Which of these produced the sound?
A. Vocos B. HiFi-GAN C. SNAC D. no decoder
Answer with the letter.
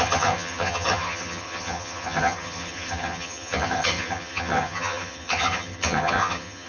B